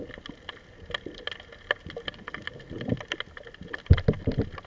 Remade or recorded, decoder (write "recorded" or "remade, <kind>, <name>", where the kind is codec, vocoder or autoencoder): recorded